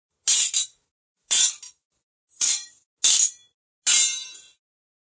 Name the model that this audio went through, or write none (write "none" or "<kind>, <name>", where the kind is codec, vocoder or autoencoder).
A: none